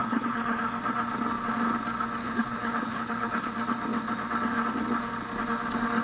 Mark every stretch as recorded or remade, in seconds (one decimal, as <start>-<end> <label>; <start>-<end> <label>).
0.0-0.6 remade; 0.6-2.2 recorded; 2.2-3.5 remade; 3.5-6.0 recorded